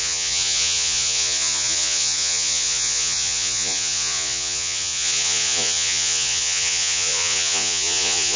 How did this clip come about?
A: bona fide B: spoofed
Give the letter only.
B